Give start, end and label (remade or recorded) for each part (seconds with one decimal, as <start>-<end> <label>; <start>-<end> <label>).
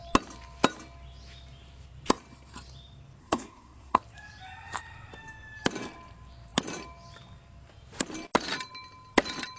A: 0.0-3.2 recorded; 3.2-4.0 remade; 4.0-9.6 recorded